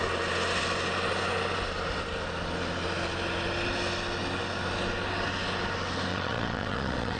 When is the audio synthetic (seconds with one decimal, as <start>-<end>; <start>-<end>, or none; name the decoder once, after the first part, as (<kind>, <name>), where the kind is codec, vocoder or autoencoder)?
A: 6.1-7.2 (vocoder, WaveNeXt)

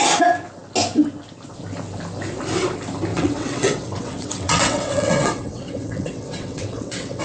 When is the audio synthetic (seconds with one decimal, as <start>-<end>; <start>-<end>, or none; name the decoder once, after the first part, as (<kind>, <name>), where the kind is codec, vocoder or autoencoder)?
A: 3.1-7.2 (vocoder, WaveNeXt)

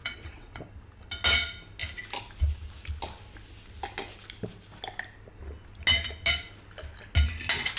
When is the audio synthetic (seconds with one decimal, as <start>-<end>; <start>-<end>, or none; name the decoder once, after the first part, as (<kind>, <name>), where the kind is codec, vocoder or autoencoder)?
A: 0.0-0.6 (vocoder, WaveNeXt)

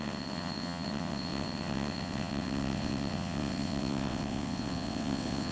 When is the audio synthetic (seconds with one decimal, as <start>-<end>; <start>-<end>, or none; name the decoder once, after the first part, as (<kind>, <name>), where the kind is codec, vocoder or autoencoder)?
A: 0.0-5.5 (vocoder, WaveNeXt)